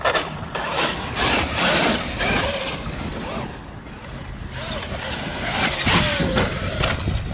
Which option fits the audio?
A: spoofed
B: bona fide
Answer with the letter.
A